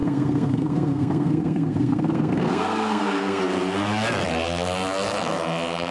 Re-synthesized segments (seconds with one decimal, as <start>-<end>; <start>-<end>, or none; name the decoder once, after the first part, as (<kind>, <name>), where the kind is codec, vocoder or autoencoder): 0.0-3.4 (codec, SNAC)